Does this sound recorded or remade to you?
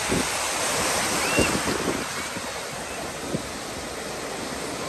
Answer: recorded